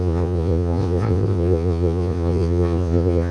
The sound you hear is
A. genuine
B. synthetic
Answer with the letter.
B